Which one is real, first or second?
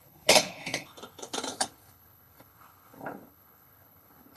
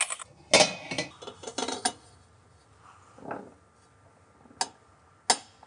second